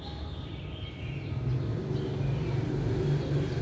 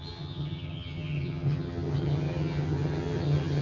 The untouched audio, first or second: first